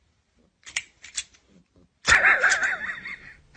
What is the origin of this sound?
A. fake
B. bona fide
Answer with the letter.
A